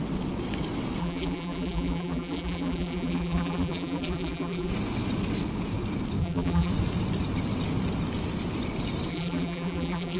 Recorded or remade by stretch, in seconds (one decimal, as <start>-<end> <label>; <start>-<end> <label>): 0.0-1.0 recorded; 1.0-4.7 remade; 4.7-6.2 recorded; 6.2-6.7 remade; 6.7-9.1 recorded; 9.1-10.2 remade